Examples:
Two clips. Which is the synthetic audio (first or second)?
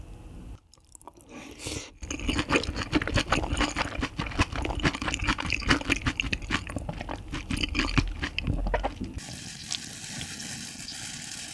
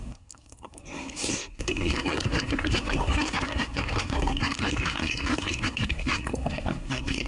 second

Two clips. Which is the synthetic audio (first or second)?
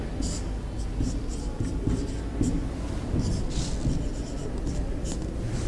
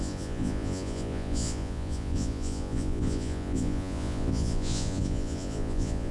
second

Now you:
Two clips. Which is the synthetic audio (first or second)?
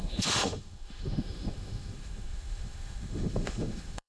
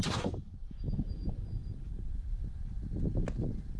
first